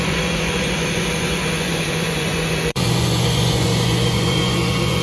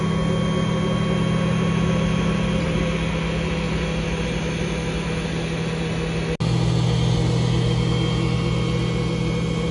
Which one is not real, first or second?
first